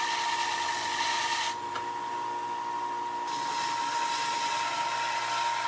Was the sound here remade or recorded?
recorded